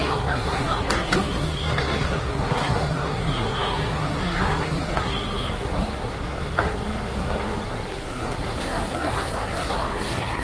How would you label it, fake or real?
fake